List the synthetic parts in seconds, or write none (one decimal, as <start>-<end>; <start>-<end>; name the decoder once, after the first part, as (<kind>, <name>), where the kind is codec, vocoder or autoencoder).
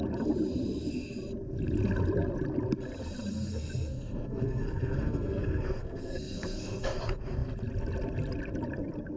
3.0-7.0 (codec, SNAC)